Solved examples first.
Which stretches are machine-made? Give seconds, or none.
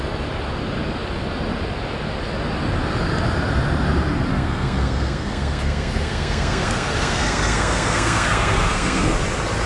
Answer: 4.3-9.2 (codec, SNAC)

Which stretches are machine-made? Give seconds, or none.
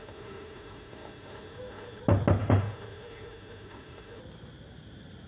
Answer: 0.0-2.0 (autoencoder, DAC-VAE); 2.4-4.2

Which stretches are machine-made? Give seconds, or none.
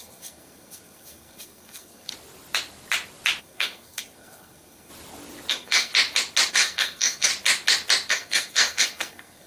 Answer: 0.0-2.1 (codec, SNAC); 3.4-4.9; 5.5-5.9; 6.5-7.3; 8.1-9.5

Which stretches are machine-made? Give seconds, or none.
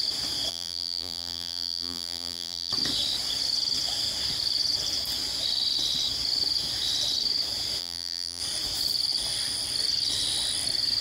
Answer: 0.5-2.7 (vocoder, BigVGAN v2); 7.8-8.4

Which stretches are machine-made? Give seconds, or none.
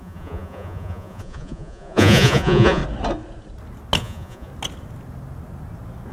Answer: 0.0-2.8 (vocoder, Vocos); 4.0-4.5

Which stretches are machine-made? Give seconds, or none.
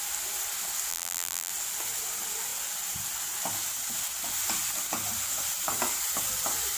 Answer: 0.9-1.5 (vocoder, BigVGAN v2)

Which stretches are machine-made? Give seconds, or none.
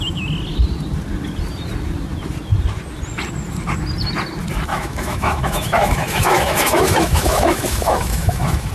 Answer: 4.7-8.7 (autoencoder, DAC-VAE)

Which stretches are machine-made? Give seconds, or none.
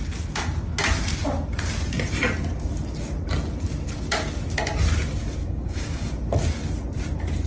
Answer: 5.4-6.1 (codec, DAC)